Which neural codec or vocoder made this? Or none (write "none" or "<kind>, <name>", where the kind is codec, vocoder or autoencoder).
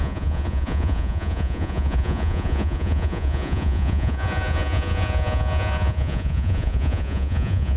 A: vocoder, Vocos